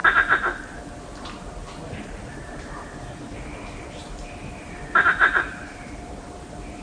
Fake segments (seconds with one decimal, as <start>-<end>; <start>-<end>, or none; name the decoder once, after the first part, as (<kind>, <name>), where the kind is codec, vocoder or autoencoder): none